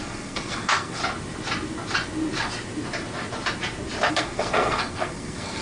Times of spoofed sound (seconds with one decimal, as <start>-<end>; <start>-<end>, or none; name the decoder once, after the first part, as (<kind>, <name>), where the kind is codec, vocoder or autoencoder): 0.0-1.0 (codec, SNAC); 4.1-5.6